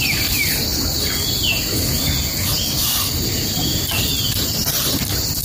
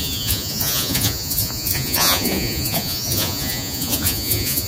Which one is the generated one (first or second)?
second